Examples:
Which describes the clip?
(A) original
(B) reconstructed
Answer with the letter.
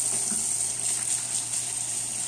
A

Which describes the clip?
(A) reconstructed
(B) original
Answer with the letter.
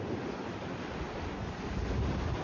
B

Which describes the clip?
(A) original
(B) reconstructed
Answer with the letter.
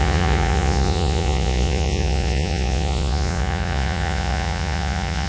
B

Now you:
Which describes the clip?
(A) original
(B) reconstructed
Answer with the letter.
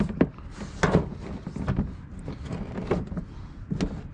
A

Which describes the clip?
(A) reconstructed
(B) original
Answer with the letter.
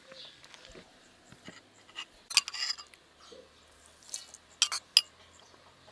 B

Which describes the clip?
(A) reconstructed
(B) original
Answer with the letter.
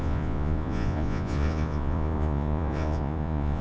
A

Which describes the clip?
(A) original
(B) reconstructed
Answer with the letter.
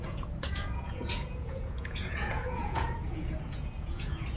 B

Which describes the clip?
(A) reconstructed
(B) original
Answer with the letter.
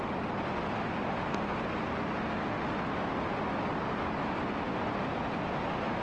B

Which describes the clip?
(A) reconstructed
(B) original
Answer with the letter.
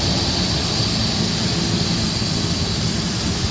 B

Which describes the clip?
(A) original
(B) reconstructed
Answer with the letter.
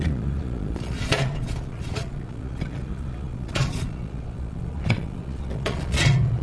B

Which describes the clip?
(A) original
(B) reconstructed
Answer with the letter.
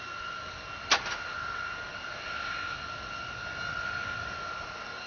A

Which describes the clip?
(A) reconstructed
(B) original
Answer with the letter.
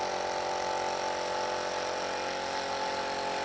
B